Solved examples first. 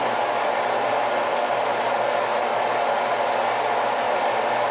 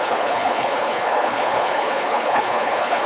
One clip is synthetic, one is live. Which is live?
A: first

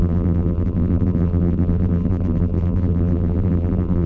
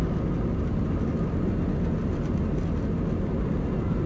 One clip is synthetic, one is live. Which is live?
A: second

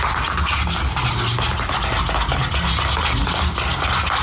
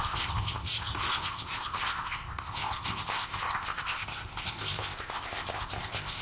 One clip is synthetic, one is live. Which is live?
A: first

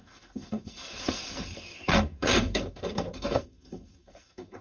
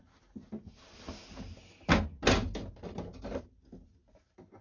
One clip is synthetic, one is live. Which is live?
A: second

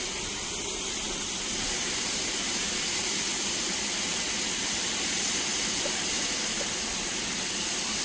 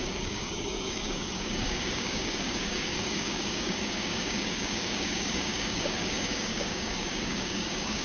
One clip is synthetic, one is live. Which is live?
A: first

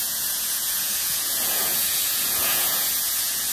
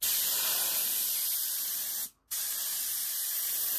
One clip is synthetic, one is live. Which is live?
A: second